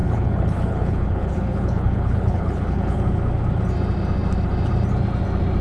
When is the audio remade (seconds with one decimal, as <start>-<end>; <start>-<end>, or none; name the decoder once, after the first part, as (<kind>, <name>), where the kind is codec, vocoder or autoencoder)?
0.0-3.0 (codec, HILCodec)